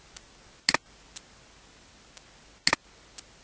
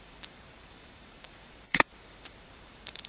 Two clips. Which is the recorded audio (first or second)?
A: first